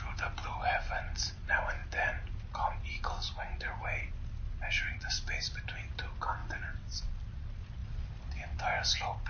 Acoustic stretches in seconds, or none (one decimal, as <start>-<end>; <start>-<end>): 0.0-6.4; 7.1-9.3